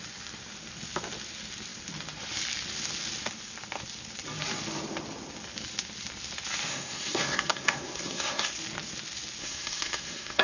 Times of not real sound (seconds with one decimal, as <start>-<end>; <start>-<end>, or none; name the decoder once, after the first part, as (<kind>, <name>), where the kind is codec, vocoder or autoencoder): 6.7-8.5 (codec, SNAC); 9.4-10.4